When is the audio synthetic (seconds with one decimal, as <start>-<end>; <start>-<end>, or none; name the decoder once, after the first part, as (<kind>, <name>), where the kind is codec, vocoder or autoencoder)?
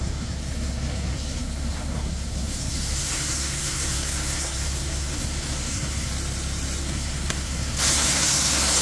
0.0-6.1 (codec, SNAC); 6.8-8.8